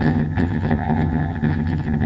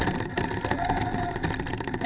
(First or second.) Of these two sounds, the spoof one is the first